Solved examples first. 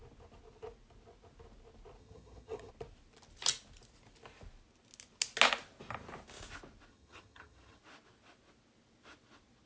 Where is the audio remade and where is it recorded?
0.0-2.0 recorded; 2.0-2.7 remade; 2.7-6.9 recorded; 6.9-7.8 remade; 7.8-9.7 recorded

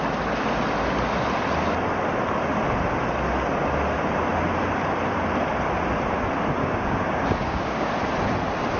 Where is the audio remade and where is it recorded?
0.0-6.6 recorded; 6.6-7.9 remade; 7.9-8.8 recorded

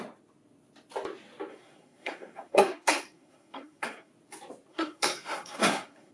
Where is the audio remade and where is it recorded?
0.0-1.5 recorded; 1.5-4.1 remade; 4.1-4.7 recorded; 4.7-6.1 remade

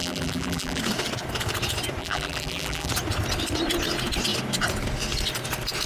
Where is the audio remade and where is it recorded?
0.0-0.8 remade; 0.8-2.0 recorded; 2.0-2.9 remade; 2.9-5.9 recorded